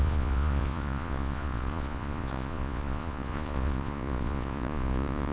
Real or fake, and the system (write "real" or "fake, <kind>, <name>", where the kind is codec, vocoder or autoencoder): fake, vocoder, Vocos